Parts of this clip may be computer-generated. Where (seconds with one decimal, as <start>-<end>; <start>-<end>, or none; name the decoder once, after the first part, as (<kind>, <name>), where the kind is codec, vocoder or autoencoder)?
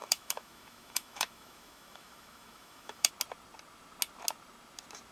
0.0-3.1 (autoencoder, DAC-VAE)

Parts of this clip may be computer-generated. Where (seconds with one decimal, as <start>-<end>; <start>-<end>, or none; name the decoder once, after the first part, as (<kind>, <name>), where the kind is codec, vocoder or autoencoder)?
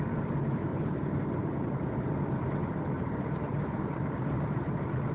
0.7-3.8 (vocoder, BigVGAN v2)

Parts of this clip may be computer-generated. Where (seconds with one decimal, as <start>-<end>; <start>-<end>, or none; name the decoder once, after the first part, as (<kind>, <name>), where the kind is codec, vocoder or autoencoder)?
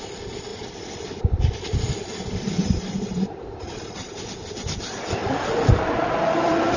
2.6-4.2 (vocoder, BigVGAN v2)